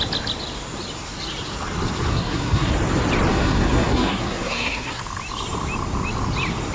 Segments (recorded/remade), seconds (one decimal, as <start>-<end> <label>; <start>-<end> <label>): 0.0-2.1 recorded; 2.1-2.7 remade; 2.7-3.3 recorded; 3.3-5.0 remade; 5.0-6.7 recorded